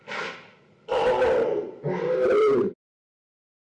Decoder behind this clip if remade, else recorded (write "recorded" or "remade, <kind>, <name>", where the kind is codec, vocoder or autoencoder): recorded